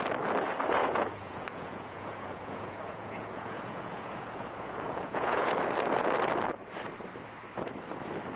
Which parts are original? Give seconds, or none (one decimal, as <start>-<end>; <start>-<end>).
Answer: 0.0-0.8; 5.5-8.4